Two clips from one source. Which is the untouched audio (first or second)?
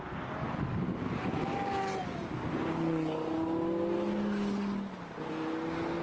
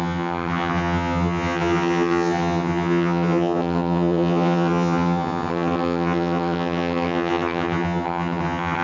first